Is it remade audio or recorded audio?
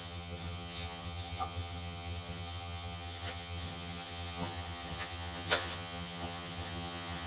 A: remade